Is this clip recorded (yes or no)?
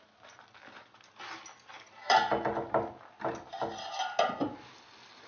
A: yes